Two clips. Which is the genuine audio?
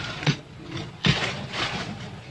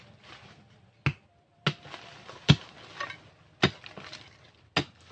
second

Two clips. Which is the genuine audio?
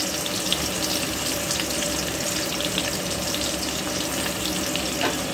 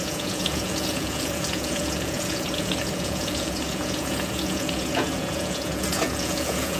first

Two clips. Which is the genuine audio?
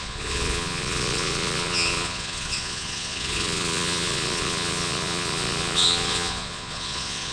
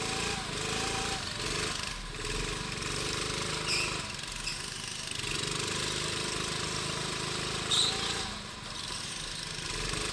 second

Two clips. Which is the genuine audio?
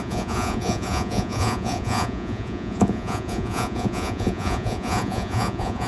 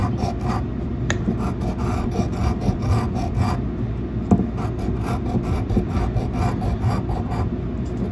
second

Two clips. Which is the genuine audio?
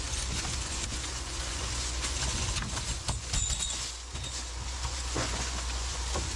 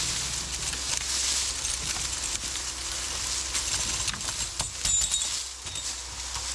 second